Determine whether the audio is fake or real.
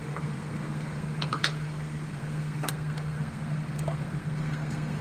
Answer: fake